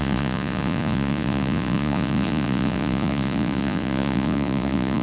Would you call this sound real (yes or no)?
no